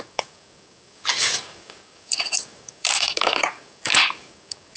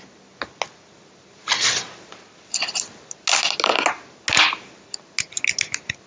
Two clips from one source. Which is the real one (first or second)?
second